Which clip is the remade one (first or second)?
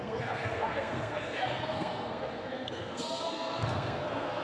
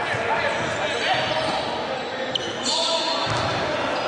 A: first